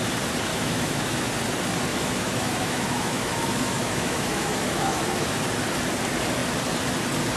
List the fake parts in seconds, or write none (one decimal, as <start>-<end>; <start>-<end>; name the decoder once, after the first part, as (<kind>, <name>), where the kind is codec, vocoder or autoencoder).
0.5-1.3 (autoencoder, DAC-VAE); 1.9-5.4